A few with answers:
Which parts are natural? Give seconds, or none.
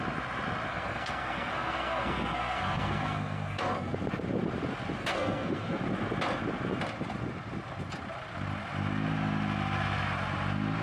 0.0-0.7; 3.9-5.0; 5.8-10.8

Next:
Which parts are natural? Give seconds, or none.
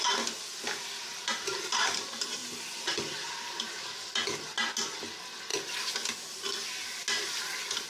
0.0-7.9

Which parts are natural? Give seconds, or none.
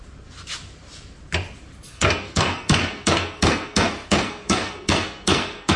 0.0-1.9